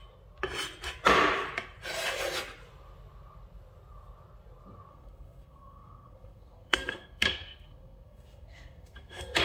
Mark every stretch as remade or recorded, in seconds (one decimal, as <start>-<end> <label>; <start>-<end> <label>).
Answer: 0.0-4.9 recorded; 4.9-9.4 remade